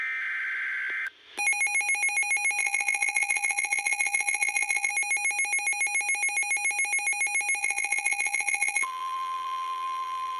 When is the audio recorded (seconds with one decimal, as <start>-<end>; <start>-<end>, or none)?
0.0-2.6; 4.9-7.6